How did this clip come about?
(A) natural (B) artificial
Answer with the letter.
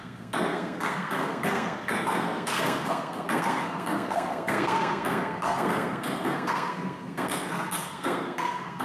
B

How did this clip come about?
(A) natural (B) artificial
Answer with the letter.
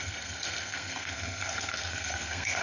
B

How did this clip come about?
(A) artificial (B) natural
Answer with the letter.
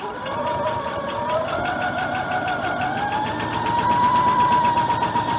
B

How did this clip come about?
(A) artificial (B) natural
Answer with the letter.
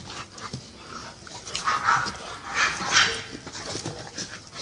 B